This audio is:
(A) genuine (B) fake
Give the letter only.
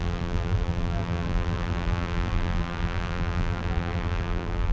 B